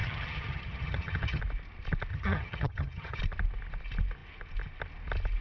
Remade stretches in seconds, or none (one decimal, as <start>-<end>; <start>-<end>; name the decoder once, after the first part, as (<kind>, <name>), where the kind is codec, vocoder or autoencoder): 0.0-1.4 (vocoder, HiFi-GAN); 2.1-3.2